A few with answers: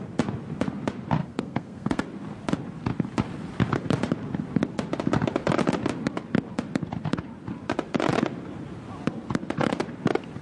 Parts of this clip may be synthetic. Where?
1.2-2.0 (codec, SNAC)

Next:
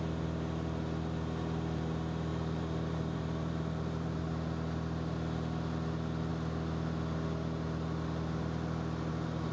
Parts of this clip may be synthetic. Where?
2.3-4.2 (vocoder, BigVGAN v2)

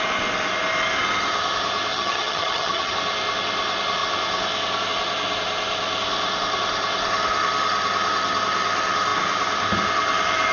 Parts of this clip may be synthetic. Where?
1.9-2.9 (vocoder, HiFi-GAN)